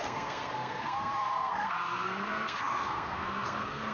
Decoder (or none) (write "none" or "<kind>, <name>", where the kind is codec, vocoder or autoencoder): codec, SNAC